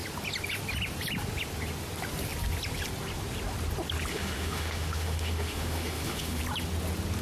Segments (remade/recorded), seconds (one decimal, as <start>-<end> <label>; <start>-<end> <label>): 0.0-4.1 recorded; 4.1-6.4 remade; 6.4-7.2 recorded

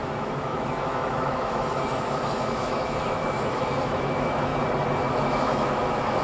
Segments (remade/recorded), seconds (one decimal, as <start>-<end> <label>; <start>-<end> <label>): 0.0-4.5 remade; 4.5-5.1 recorded; 5.1-6.2 remade

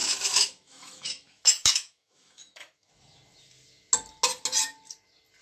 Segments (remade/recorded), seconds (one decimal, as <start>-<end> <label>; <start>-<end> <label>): 0.0-2.9 remade; 2.9-5.4 recorded

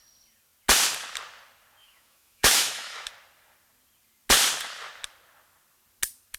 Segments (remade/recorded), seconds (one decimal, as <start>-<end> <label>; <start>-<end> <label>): 0.0-1.8 recorded; 1.8-3.1 remade; 3.1-6.4 recorded

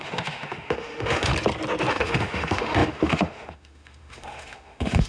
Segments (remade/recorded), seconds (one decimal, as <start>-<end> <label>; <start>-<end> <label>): 0.0-1.3 remade; 1.3-1.9 recorded; 1.9-5.1 remade

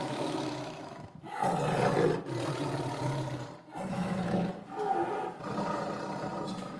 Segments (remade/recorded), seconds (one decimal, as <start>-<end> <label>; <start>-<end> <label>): 0.0-1.4 remade; 1.4-3.9 recorded; 3.9-4.5 remade; 4.5-6.8 recorded

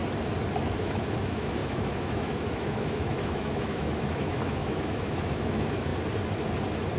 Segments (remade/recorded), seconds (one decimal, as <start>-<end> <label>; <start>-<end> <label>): 0.0-0.8 recorded; 0.8-5.9 remade; 5.9-7.0 recorded